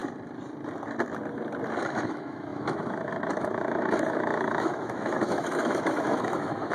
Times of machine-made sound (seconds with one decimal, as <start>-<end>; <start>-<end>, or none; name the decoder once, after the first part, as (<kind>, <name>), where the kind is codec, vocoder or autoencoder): 1.8-6.7 (autoencoder, DAC-VAE)

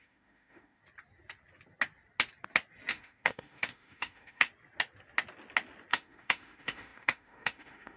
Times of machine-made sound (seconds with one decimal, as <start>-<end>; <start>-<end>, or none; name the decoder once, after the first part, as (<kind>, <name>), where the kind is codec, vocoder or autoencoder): 0.0-0.8 (autoencoder, DAC-VAE); 2.9-4.5; 5.9-8.0

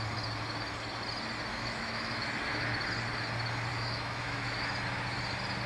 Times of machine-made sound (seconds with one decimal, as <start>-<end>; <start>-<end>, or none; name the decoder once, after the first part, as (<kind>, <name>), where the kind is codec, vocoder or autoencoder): 1.5-2.3 (autoencoder, DAC-VAE); 3.7-4.6

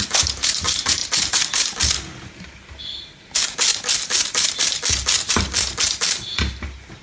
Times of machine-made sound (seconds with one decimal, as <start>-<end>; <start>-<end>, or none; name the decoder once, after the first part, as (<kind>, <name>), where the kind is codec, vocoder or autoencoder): none

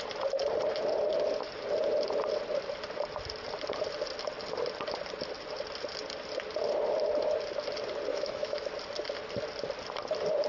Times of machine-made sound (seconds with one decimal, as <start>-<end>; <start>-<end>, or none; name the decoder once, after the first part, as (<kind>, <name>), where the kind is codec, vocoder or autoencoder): 8.1-8.7 (autoencoder, DAC-VAE)